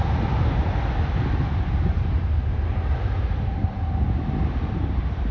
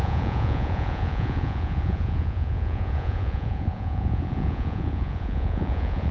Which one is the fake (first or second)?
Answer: second